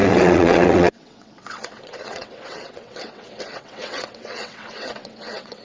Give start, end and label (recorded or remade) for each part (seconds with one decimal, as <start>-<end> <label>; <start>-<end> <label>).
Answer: 0.0-5.6 remade